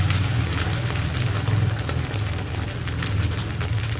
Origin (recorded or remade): remade